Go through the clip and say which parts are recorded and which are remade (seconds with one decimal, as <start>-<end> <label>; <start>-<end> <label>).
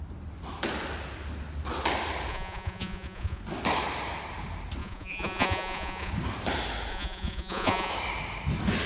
0.0-2.3 recorded; 2.3-3.4 remade; 3.4-4.8 recorded; 4.8-6.1 remade; 6.1-6.9 recorded; 6.9-7.9 remade; 7.9-8.9 recorded